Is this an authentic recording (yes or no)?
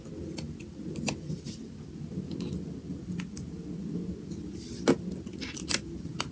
yes